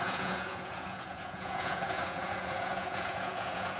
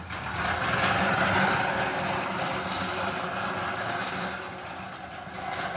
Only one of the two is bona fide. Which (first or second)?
second